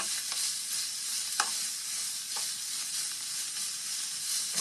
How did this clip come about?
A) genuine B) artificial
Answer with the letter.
A